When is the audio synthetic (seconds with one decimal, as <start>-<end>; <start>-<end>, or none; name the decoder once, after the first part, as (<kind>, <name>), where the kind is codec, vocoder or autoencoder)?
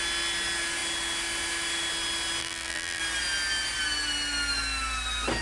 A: 2.4-3.0 (vocoder, BigVGAN v2)